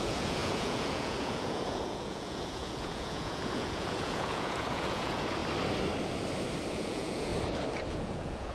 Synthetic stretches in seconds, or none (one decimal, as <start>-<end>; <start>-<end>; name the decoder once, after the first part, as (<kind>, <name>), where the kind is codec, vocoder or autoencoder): 0.0-5.4 (vocoder, Vocos); 6.7-7.3; 7.9-8.5